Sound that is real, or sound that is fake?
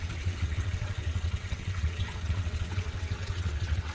fake